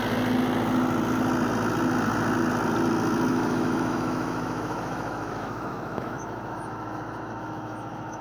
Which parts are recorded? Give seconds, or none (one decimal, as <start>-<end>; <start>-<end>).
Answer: 0.0-3.3